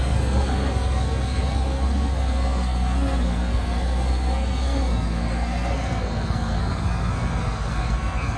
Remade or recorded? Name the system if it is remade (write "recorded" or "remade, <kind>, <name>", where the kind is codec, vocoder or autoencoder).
remade, codec, SNAC